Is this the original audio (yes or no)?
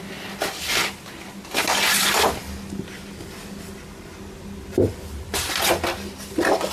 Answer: yes